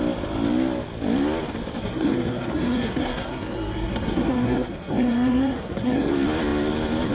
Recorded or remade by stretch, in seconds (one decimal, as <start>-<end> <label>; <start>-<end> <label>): 0.0-1.8 recorded; 1.8-6.1 remade; 6.1-7.1 recorded